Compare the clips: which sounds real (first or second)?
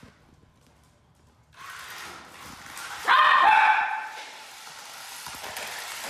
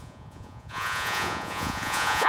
first